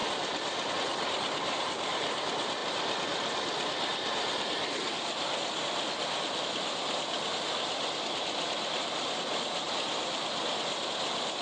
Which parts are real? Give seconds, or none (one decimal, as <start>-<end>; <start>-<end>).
0.7-11.4